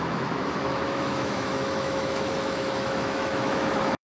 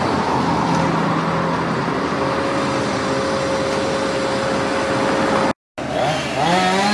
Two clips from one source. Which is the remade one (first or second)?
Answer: first